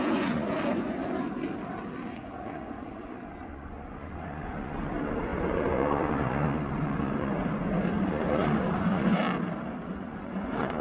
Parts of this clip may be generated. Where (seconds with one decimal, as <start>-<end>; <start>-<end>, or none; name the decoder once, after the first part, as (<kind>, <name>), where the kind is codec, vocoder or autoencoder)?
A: 0.0-1.0 (vocoder, Vocos); 2.1-9.2; 9.9-10.8

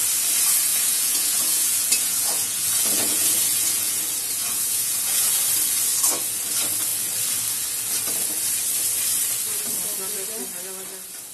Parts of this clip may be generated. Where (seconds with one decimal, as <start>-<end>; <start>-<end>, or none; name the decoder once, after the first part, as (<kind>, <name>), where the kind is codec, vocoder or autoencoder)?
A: 0.7-4.0 (vocoder, Vocos); 4.4-5.3

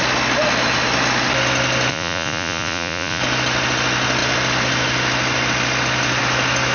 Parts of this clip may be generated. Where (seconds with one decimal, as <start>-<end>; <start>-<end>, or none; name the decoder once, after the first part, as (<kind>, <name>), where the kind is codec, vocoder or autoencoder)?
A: 1.9-3.2 (vocoder, Vocos)

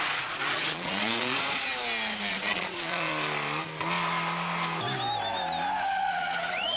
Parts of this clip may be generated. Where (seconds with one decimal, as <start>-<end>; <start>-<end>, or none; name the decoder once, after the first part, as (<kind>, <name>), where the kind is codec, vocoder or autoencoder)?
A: 0.0-1.7 (vocoder, Vocos); 2.3-3.1; 6.0-6.8

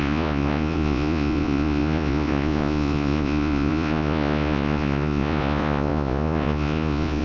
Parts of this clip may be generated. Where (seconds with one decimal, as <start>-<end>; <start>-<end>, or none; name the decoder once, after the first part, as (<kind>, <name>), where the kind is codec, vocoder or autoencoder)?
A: 0.0-7.2 (vocoder, Vocos)